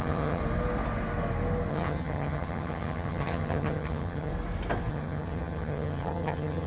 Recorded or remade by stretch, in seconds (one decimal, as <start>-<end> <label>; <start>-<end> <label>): 0.0-0.4 remade; 0.4-1.7 recorded; 1.7-4.3 remade; 4.3-4.9 recorded; 4.9-6.7 remade